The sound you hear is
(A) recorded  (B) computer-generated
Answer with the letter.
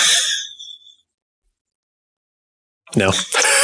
A